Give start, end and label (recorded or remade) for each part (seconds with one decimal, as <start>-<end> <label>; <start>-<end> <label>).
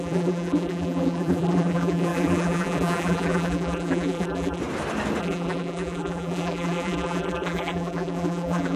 0.0-4.6 remade; 4.6-5.2 recorded; 5.2-8.8 remade